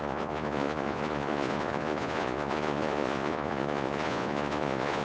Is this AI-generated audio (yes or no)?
yes